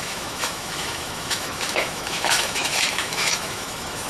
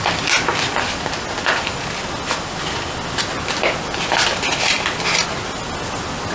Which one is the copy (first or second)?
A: first